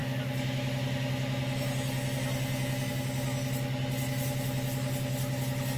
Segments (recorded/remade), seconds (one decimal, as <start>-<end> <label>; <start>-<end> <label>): 0.0-5.8 recorded